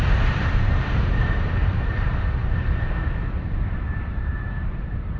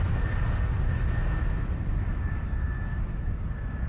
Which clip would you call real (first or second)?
second